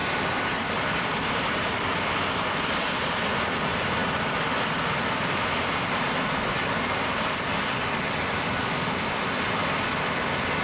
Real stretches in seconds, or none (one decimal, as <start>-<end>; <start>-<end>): 0.0-10.6

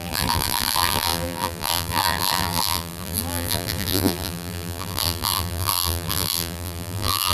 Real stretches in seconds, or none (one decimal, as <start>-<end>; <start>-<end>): none

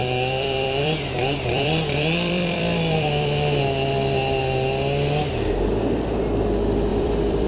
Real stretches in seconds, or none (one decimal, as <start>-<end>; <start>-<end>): 3.6-6.9

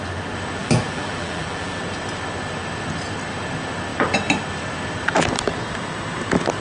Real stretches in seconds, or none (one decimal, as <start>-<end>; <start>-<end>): 0.0-0.6; 1.8-6.6

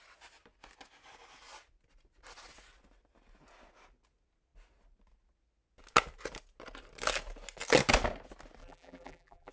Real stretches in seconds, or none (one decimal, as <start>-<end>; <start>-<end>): 0.0-8.6

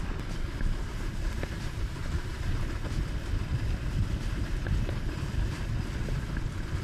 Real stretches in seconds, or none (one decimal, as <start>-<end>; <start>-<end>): 0.0-2.0; 2.6-6.8

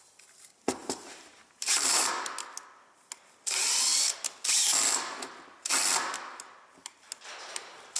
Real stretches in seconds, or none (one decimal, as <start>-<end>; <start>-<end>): 0.0-0.8; 2.1-8.0

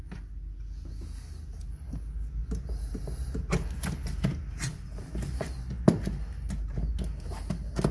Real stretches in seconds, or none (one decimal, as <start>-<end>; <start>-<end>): 0.0-7.9